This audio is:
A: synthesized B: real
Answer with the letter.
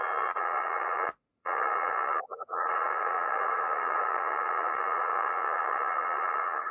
A